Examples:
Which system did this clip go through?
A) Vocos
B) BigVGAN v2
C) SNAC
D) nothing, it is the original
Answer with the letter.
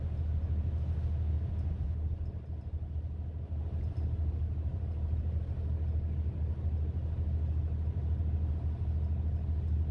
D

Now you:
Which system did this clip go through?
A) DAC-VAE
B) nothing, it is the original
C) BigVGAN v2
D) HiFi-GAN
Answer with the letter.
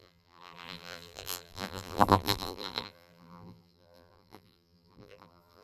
C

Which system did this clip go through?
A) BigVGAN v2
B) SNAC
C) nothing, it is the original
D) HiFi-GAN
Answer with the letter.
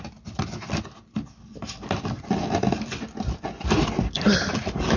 C